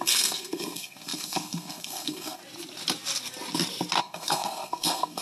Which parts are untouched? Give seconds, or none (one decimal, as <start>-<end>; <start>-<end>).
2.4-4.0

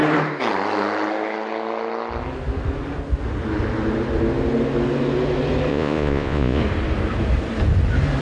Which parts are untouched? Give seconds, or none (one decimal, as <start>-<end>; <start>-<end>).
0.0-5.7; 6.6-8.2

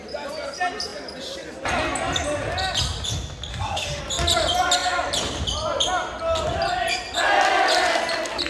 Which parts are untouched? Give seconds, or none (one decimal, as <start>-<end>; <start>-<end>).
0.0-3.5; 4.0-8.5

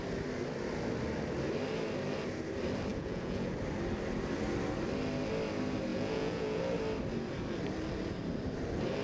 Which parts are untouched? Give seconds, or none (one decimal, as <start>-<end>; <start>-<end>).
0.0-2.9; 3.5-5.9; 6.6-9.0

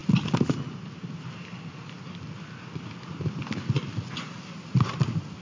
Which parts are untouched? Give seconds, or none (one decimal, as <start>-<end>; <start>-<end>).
0.0-5.4

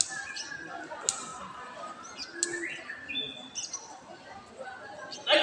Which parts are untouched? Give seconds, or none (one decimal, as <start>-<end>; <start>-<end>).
0.0-5.4